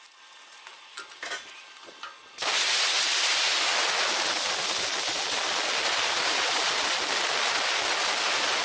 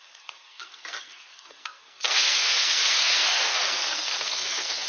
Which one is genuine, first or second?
first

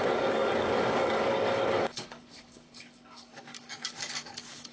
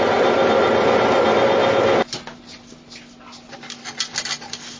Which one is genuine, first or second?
second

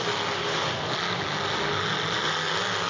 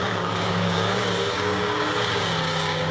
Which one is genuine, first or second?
first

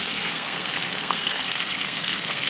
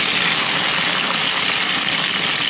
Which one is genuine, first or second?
second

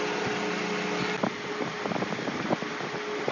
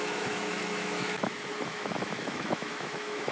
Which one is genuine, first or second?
first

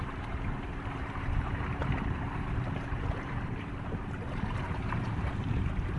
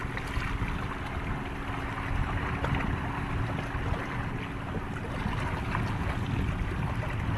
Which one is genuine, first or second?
second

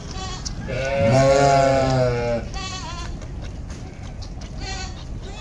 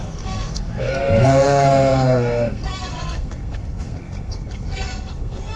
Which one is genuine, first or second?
first